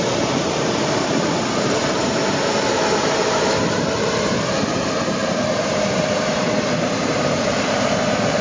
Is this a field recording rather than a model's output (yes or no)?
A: no